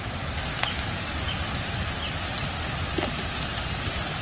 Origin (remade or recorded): recorded